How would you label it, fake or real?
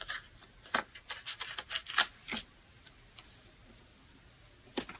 real